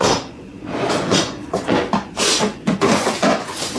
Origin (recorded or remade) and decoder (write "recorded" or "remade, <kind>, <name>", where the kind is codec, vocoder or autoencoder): remade, vocoder, Vocos